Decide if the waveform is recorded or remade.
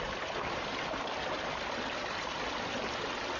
recorded